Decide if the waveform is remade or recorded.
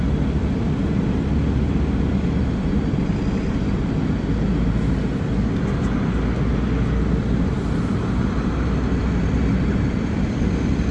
recorded